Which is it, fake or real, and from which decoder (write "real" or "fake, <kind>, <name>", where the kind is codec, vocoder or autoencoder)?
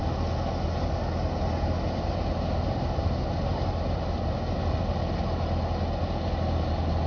real